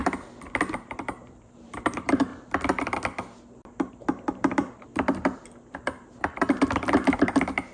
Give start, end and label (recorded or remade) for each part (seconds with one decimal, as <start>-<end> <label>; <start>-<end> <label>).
0.0-0.7 recorded; 0.7-2.3 remade; 2.3-3.9 recorded; 3.9-4.9 remade; 4.9-5.7 recorded; 5.7-7.7 remade